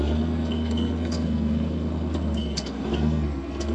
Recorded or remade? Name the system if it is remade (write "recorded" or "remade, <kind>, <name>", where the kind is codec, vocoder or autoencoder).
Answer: remade, codec, SNAC